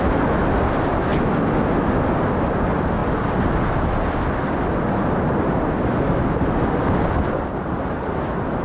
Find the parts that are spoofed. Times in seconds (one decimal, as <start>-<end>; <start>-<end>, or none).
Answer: none